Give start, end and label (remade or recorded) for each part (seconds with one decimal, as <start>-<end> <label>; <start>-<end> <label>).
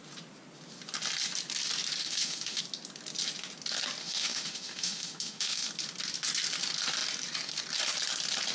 0.0-2.0 recorded; 2.0-2.6 remade; 2.6-4.0 recorded; 4.0-5.7 remade; 5.7-8.5 recorded